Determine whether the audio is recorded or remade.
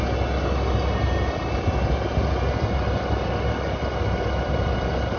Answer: recorded